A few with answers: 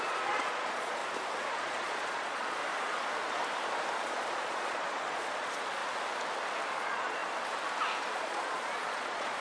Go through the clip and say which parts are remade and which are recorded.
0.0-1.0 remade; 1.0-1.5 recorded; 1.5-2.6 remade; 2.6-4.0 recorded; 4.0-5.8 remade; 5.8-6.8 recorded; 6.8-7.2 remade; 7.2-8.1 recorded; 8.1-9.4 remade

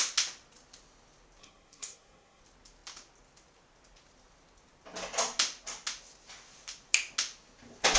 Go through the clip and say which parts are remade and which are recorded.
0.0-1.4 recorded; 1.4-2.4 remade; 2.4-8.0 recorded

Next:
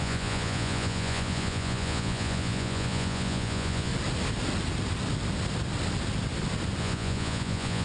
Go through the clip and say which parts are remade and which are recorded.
0.0-3.9 remade; 3.9-6.8 recorded; 6.8-7.8 remade

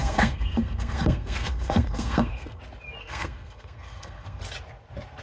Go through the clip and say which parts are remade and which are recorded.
0.0-2.6 remade; 2.6-3.0 recorded; 3.0-4.4 remade; 4.4-5.2 recorded